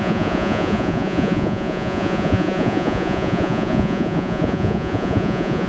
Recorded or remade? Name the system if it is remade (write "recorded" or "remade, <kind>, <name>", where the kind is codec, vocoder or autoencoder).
remade, vocoder, Vocos